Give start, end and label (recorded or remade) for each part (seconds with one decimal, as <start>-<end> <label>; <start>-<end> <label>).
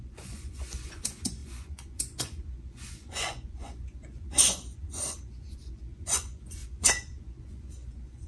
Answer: 0.0-8.3 remade